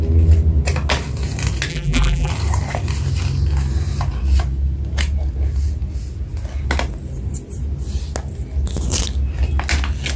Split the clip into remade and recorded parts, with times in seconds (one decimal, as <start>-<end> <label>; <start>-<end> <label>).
0.0-1.7 recorded; 1.7-2.3 remade; 2.3-10.2 recorded